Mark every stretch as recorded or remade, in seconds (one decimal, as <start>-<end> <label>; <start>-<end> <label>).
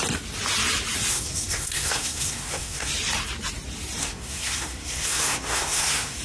0.0-1.1 recorded; 1.1-2.9 remade; 2.9-4.0 recorded; 4.0-6.2 remade